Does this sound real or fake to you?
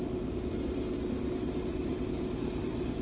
real